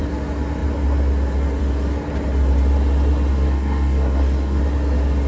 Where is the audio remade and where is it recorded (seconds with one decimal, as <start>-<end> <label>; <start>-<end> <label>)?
0.0-3.3 recorded; 3.3-4.6 remade; 4.6-5.3 recorded